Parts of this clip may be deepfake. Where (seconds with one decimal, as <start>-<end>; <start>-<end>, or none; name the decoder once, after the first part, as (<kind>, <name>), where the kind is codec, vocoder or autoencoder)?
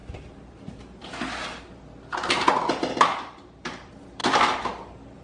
2.9-4.2 (vocoder, BigVGAN v2); 4.8-5.2